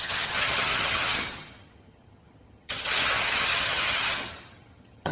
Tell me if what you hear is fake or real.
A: fake